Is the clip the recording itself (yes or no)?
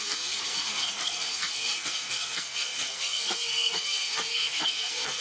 no